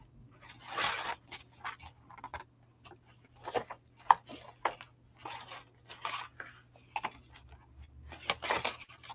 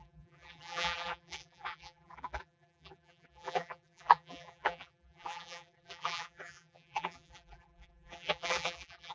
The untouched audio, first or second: first